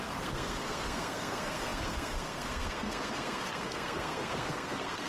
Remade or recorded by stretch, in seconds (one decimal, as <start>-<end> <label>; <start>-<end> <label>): 0.0-5.1 remade